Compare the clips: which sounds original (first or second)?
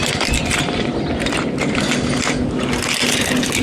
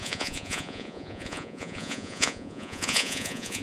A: first